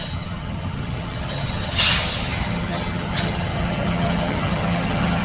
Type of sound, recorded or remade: remade